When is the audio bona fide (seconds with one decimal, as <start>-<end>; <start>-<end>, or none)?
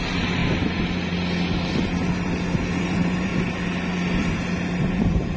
0.4-2.8; 3.3-5.0